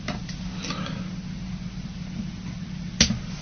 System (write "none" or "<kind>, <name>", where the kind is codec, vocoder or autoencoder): none